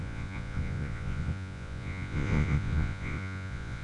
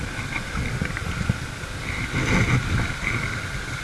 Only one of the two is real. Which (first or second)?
second